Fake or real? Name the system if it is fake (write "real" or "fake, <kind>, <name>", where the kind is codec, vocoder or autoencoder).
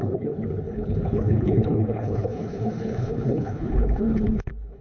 fake, codec, HILCodec